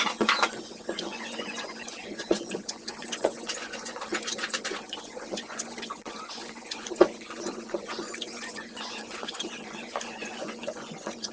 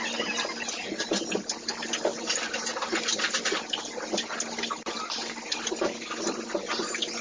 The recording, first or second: second